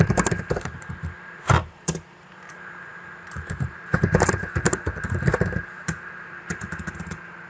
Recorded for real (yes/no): no